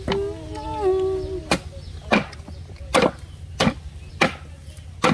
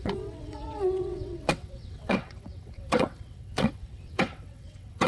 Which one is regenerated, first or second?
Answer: second